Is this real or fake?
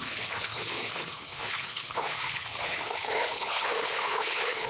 fake